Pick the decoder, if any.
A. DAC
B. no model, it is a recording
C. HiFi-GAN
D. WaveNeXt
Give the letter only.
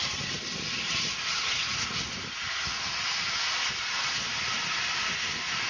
B